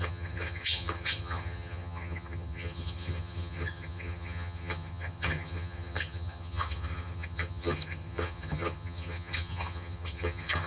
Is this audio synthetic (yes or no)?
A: yes